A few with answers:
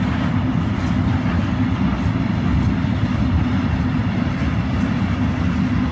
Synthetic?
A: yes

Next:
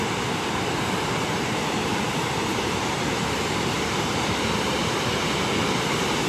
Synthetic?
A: yes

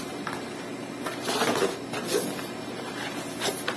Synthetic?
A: no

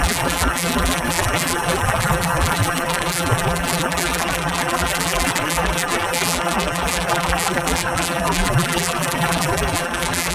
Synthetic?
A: yes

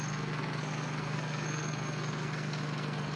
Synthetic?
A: yes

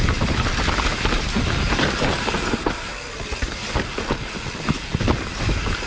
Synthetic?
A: no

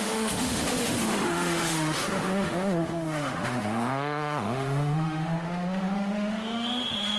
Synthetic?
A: yes